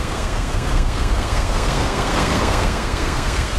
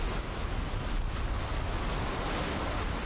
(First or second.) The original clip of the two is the second